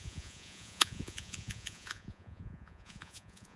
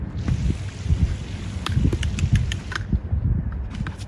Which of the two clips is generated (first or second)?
first